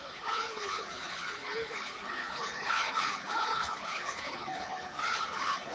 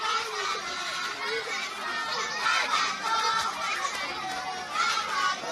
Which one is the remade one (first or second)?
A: first